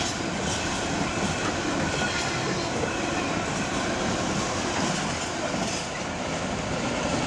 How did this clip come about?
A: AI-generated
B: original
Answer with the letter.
B